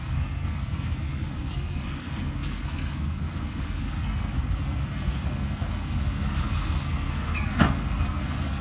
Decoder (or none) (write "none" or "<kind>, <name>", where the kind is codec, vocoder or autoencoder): codec, SNAC